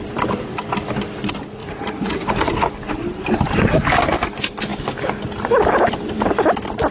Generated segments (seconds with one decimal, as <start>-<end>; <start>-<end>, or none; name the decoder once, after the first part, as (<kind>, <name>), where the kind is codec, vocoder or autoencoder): 1.6-2.5 (vocoder, Vocos)